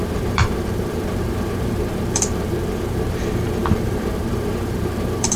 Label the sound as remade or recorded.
remade